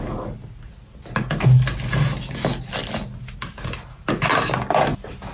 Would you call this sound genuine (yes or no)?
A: yes